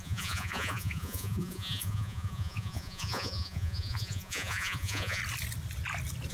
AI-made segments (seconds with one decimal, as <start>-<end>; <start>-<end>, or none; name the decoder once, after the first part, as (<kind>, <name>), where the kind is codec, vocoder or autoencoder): 0.0-5.2 (vocoder, Vocos)